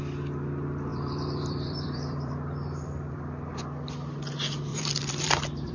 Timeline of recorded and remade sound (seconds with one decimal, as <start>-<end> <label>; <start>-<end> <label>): 0.0-0.9 recorded; 0.9-3.6 remade; 3.6-4.7 recorded; 4.7-5.7 remade